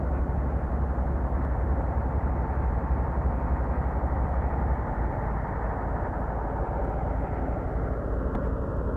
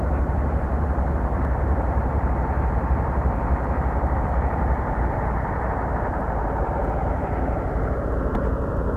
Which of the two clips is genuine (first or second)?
first